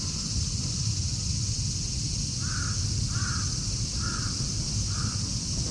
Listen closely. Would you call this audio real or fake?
real